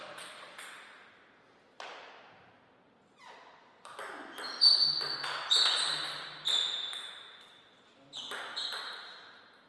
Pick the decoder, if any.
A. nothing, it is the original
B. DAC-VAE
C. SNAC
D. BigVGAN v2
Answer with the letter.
A